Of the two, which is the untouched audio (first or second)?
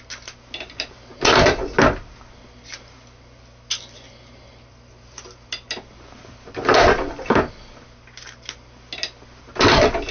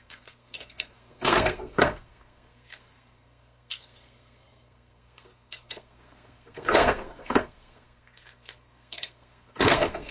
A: first